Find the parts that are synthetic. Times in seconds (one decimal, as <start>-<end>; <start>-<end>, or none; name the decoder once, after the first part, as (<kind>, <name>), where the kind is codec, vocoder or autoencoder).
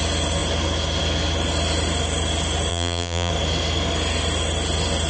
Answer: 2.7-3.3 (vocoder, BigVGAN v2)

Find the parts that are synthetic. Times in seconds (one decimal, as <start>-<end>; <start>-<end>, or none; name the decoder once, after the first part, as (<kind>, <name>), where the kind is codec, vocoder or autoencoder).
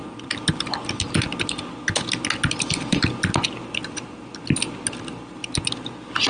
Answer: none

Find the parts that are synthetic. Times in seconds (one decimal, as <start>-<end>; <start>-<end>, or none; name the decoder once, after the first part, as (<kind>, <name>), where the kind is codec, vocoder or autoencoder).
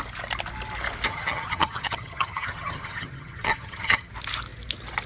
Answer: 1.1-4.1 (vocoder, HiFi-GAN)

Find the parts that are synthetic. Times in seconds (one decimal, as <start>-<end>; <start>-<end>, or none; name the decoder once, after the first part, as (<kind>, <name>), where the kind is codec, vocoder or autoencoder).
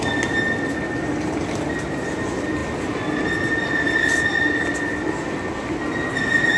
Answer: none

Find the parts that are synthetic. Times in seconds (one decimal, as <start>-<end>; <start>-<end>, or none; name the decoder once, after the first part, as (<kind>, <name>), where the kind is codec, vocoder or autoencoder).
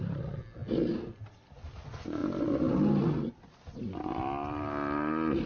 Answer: none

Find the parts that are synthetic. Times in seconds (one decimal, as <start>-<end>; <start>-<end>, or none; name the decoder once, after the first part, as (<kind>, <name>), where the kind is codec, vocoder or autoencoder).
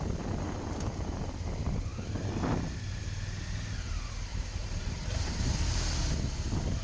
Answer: 4.3-6.0 (vocoder, BigVGAN v2)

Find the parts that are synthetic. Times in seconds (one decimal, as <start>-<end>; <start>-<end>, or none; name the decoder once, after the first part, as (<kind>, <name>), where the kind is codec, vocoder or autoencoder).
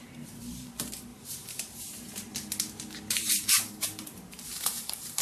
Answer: 0.0-2.3 (vocoder, BigVGAN v2); 3.1-5.2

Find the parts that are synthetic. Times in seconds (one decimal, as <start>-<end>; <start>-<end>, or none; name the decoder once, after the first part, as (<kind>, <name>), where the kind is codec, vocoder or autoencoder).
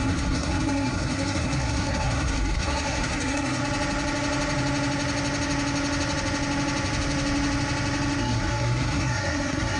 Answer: 0.0-3.6 (codec, SNAC); 8.2-9.8